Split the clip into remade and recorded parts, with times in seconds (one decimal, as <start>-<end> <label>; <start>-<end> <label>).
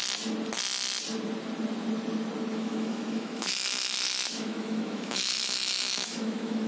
0.0-2.5 recorded; 2.5-6.7 remade